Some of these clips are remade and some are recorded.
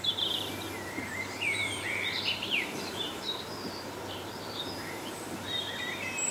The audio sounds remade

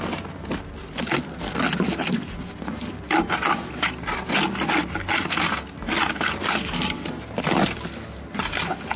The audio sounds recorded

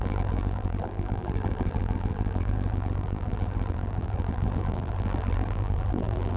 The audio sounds remade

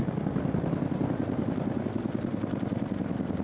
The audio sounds recorded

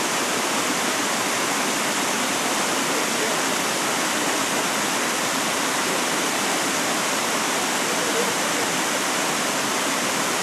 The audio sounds remade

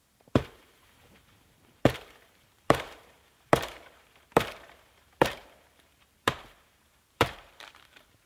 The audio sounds remade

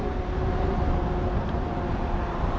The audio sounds recorded